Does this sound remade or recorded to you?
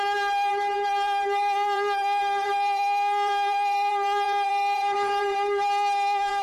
remade